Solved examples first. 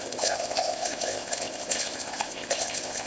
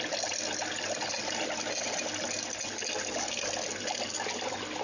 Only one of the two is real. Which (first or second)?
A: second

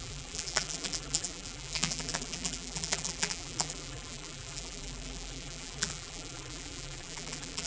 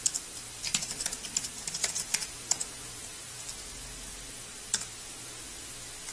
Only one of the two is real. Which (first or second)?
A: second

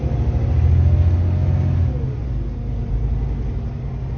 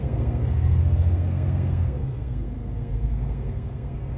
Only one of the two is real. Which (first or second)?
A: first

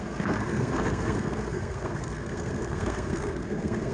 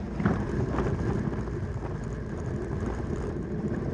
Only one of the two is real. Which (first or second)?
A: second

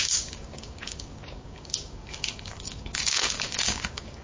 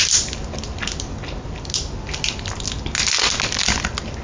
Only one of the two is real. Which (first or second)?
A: second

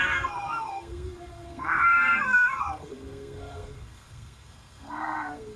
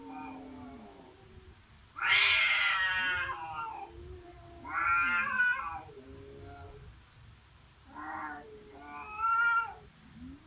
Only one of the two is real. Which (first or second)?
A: second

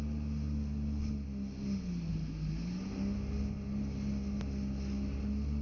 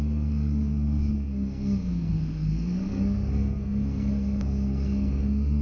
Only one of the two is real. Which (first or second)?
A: first